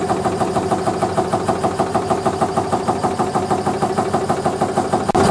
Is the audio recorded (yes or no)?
yes